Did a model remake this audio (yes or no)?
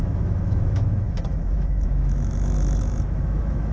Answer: yes